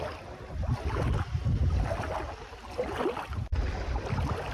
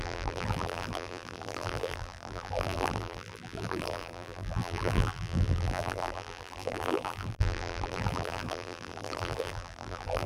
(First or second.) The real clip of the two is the first